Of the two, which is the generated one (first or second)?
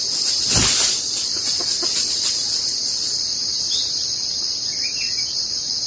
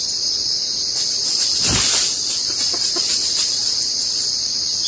second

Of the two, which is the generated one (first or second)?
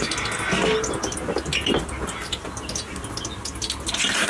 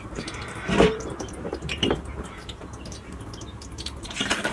second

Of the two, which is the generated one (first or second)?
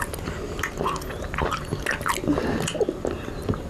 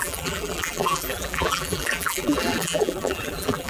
second